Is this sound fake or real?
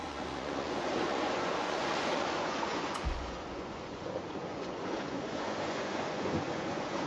fake